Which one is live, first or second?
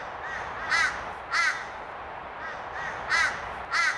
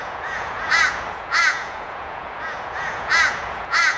first